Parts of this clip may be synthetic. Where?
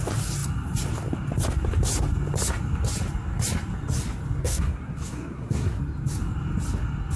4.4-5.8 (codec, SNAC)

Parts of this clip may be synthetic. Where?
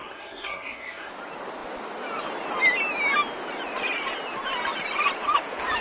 0.0-1.1 (codec, SNAC)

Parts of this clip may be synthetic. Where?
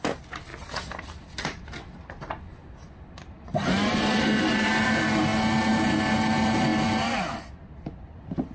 none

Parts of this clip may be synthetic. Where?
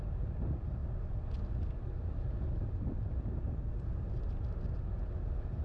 none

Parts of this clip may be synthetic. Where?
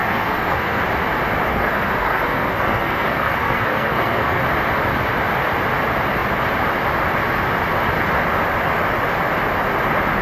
0.0-0.8 (codec, SNAC); 1.5-4.4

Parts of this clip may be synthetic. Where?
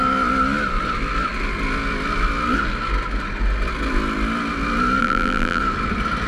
5.0-5.6 (vocoder, BigVGAN v2)